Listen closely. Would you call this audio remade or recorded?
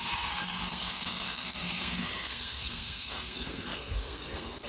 remade